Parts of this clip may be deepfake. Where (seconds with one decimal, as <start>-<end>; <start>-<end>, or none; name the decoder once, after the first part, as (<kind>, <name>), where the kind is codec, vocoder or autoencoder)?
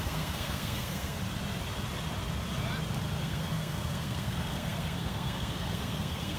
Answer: 0.0-1.2 (codec, SNAC); 3.2-6.4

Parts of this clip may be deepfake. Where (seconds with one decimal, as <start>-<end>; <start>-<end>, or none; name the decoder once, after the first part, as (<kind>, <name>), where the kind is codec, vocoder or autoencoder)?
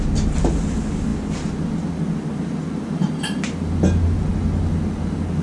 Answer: none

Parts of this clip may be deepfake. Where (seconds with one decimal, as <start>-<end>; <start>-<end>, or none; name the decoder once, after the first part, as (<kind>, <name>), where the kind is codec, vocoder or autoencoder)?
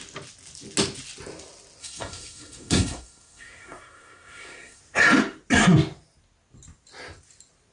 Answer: 1.8-4.8 (codec, SNAC)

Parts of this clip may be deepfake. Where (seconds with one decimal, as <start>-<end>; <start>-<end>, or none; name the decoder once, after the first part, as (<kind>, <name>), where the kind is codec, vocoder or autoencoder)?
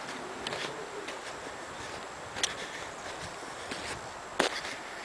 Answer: none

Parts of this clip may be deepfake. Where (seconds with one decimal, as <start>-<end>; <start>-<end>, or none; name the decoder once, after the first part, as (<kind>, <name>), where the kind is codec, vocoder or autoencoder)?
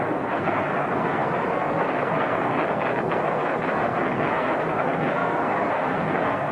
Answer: 0.0-6.5 (codec, SNAC)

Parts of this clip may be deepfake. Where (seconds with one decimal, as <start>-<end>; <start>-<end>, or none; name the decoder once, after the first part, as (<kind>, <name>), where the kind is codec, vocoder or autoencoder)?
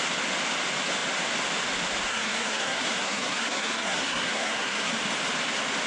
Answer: 2.1-4.9 (codec, SNAC)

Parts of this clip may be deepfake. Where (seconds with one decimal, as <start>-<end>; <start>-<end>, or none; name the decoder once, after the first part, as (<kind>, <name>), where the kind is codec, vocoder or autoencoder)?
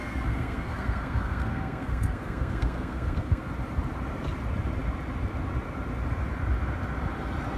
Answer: 0.0-3.5 (codec, SNAC)